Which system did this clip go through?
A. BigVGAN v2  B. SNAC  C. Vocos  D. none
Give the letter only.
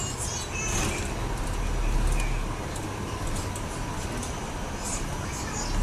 D